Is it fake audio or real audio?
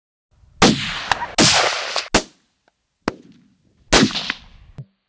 real